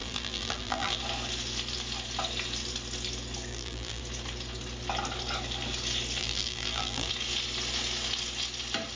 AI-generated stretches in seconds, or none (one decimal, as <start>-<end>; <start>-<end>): 0.0-1.0; 3.5-4.0; 6.2-7.1